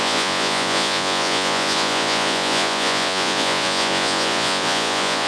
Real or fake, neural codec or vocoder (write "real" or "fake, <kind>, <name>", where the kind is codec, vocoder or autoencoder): fake, vocoder, Vocos